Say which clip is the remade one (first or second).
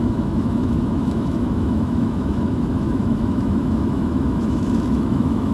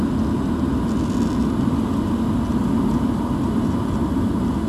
first